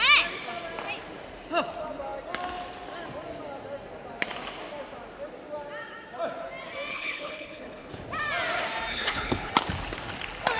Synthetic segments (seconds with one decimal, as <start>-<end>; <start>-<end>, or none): 6.9-7.9; 8.9-9.5